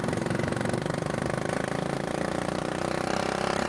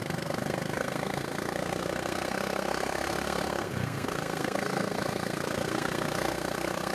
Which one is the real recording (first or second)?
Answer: first